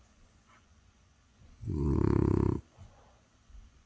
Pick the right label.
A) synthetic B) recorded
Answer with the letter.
A